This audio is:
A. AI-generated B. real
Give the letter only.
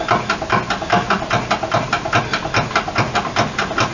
B